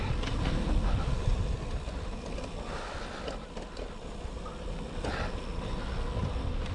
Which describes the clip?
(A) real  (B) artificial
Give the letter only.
A